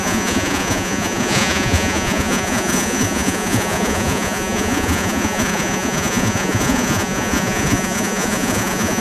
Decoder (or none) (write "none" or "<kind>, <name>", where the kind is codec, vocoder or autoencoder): vocoder, Vocos